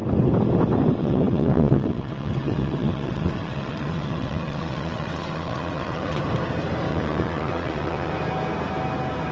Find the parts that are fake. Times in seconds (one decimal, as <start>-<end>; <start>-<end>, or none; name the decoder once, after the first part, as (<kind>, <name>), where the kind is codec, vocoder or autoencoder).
1.0-6.2 (vocoder, WaveNeXt); 6.9-8.1